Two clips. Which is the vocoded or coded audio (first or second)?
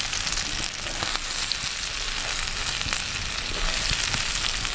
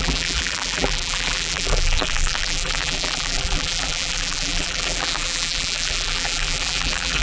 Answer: second